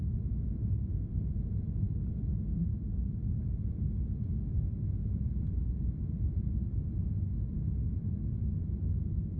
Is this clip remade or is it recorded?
recorded